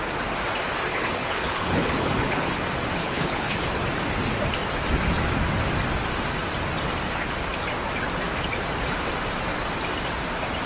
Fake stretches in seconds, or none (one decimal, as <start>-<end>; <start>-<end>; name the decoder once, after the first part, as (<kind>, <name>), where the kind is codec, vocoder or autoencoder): 0.9-2.6 (codec, HILCodec); 3.0-3.6